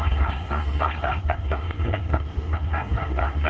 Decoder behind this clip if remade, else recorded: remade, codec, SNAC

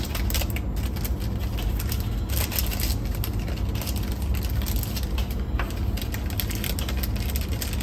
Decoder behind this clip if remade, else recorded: recorded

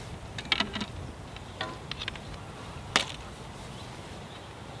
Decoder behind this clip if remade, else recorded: recorded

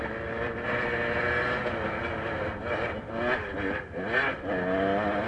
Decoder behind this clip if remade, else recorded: recorded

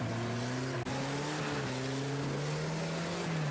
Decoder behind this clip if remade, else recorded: recorded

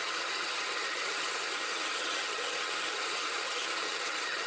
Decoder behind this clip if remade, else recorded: remade, vocoder, HiFi-GAN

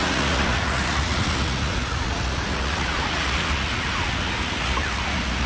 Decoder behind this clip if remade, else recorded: remade, vocoder, Vocos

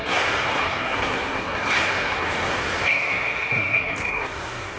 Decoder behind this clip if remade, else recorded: remade, codec, SNAC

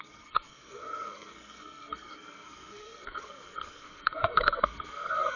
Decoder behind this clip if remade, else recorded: remade, codec, SNAC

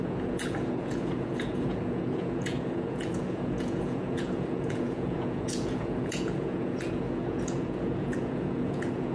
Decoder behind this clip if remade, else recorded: remade, vocoder, Vocos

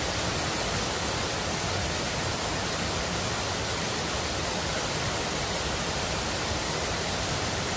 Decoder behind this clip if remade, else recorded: recorded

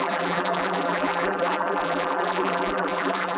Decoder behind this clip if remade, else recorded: remade, vocoder, BigVGAN v2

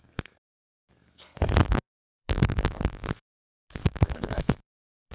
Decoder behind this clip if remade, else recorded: remade, codec, SNAC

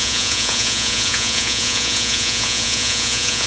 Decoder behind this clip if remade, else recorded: remade, vocoder, Vocos